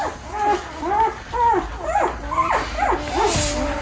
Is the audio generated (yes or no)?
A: no